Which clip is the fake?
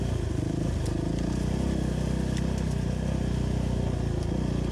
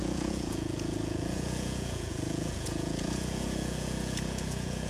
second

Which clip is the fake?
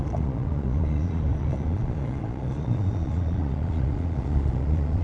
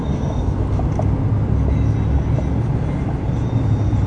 first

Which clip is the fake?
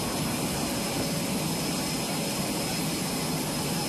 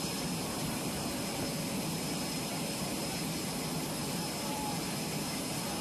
second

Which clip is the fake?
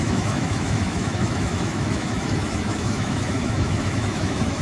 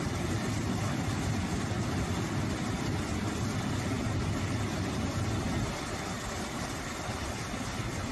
first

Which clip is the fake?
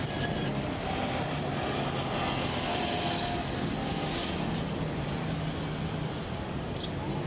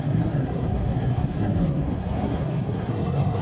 second